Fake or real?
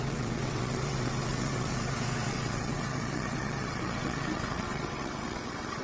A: fake